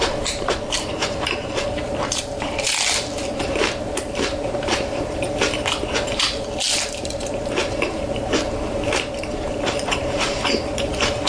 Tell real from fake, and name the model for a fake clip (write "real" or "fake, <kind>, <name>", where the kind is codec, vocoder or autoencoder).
fake, vocoder, BigVGAN v2